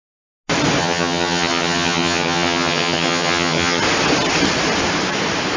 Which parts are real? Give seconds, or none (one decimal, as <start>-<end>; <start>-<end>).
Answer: 0.0-0.8; 3.8-5.6